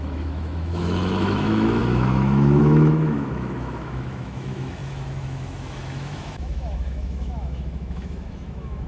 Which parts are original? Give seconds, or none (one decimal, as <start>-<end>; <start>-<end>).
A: none